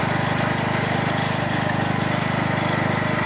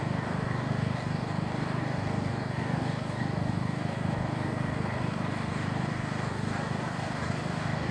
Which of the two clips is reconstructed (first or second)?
second